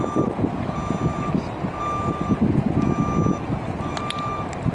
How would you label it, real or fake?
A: real